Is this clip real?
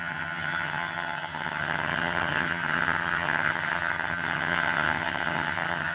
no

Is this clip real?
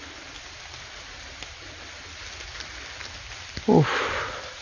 yes